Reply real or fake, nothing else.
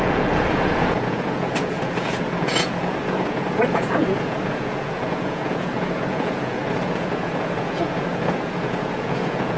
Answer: fake